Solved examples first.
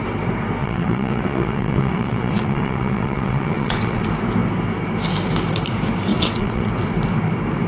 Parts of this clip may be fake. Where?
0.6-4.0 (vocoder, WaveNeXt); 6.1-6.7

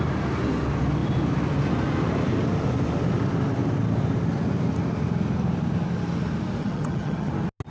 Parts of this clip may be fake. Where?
6.6-7.3 (vocoder, HiFi-GAN)

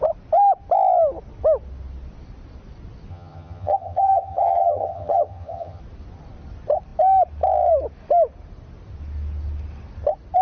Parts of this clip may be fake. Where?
3.1-5.8 (vocoder, HiFi-GAN)

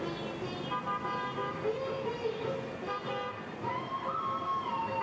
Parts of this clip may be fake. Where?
none